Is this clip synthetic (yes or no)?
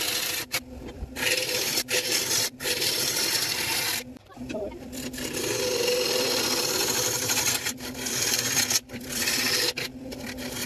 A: yes